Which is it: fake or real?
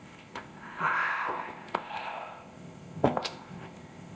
fake